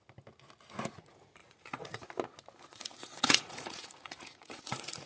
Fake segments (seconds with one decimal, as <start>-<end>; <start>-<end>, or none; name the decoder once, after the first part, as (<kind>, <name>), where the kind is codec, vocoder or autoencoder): 1.4-2.1 (vocoder, Vocos); 2.7-5.1